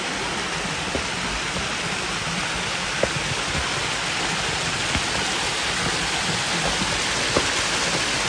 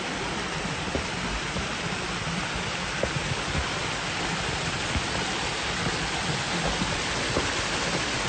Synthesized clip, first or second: second